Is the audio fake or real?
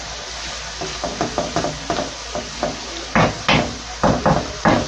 real